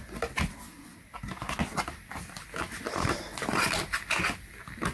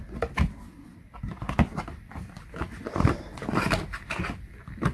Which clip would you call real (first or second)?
first